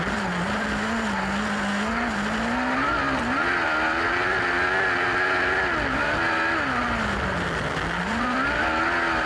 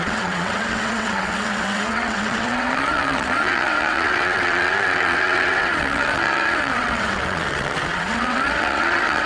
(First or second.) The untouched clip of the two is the first